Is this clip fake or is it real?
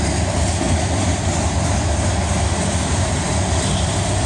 real